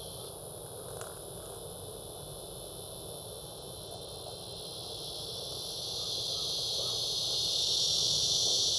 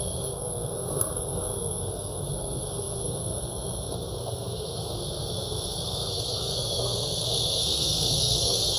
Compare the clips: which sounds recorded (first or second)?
first